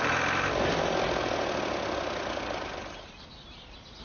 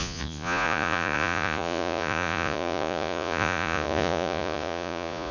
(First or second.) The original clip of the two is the first